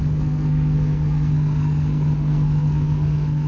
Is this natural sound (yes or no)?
no